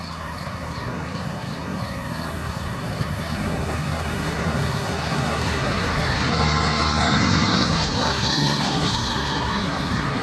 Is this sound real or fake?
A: fake